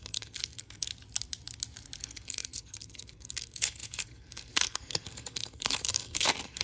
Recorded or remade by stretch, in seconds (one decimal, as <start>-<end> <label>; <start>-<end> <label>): 0.0-0.9 remade; 0.9-2.0 recorded; 2.0-6.6 remade